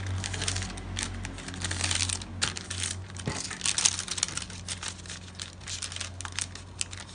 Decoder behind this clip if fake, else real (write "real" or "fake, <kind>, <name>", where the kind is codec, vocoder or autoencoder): real